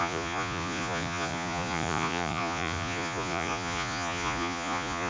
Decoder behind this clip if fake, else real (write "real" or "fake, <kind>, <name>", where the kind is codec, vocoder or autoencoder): fake, vocoder, Vocos